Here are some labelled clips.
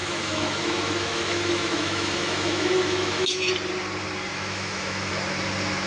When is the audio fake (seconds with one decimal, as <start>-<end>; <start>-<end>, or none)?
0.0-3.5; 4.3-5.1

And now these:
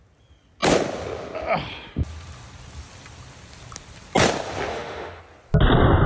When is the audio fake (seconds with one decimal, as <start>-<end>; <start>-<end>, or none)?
4.7-5.2

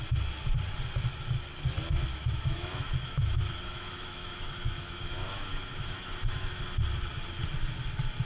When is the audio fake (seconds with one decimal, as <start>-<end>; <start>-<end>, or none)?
2.1-6.6

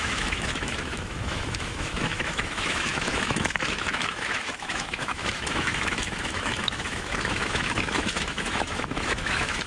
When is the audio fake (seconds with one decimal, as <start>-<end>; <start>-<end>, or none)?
0.0-9.7

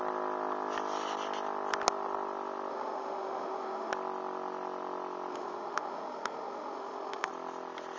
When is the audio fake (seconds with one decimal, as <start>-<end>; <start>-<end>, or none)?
2.7-3.9; 5.3-7.3